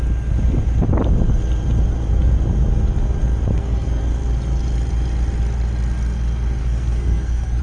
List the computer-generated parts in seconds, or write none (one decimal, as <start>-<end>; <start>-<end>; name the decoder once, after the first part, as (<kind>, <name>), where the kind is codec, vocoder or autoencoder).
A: 3.5-4.0 (codec, SNAC); 6.6-7.6